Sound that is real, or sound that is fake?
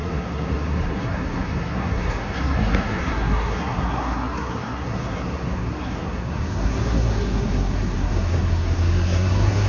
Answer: fake